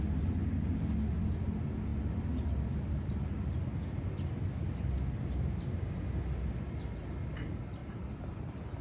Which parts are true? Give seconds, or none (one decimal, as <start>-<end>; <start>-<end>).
0.0-7.8